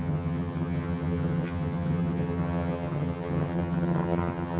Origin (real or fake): fake